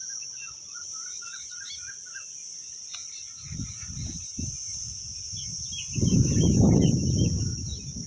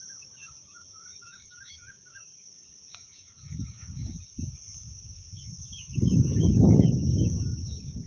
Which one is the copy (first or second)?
second